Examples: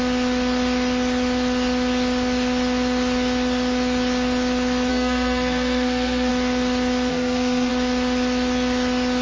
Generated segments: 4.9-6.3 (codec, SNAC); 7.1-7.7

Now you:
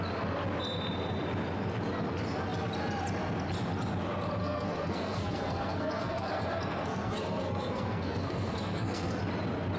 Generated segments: 4.4-9.2 (codec, SNAC)

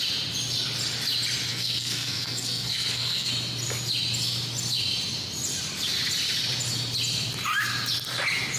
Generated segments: 1.5-3.3 (codec, SNAC)

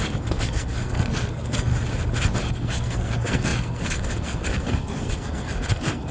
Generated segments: 0.0-1.7 (codec, SNAC); 2.5-6.1

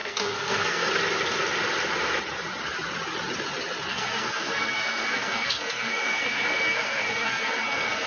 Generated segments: 0.0-0.9 (codec, SNAC); 3.9-8.1

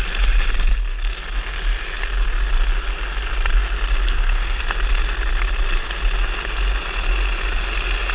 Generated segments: 4.1-4.6 (codec, SNAC)